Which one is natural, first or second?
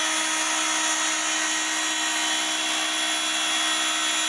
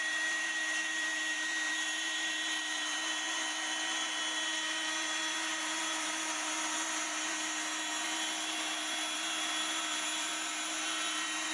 first